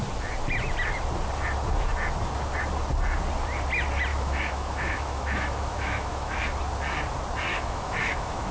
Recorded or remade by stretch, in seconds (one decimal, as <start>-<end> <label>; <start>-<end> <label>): 0.0-4.1 recorded; 4.1-6.4 remade; 6.4-7.5 recorded; 7.5-8.5 remade